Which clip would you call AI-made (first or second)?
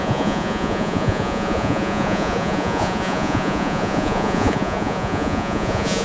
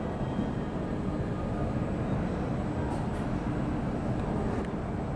first